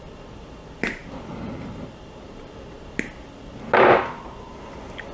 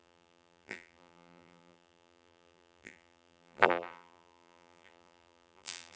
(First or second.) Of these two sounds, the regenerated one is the second